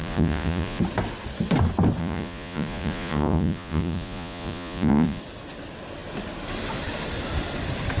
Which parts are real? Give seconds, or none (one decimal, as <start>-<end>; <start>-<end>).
0.8-2.0; 5.2-8.0

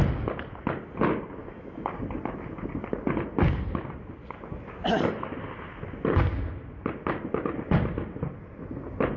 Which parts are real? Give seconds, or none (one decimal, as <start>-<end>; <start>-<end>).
0.0-1.4; 1.9-9.2

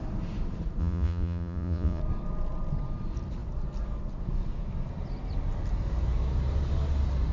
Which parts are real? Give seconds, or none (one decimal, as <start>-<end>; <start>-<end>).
0.0-0.8; 2.0-7.3

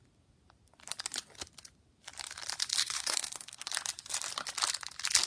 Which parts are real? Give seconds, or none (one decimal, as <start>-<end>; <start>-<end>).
0.0-2.8; 3.7-5.3

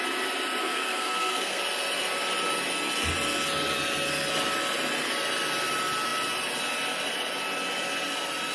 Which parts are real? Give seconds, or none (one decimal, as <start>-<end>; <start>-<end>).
0.0-0.6; 1.6-8.5

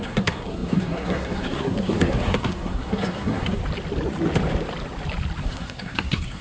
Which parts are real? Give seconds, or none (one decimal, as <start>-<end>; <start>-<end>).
3.6-5.4